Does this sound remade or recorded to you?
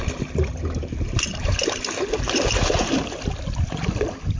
recorded